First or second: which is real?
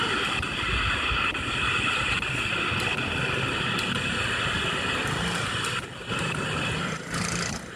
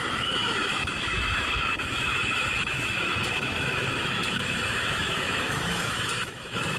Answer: first